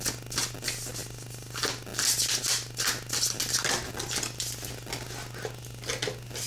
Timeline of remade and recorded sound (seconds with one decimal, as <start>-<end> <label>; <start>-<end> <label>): 0.0-6.5 recorded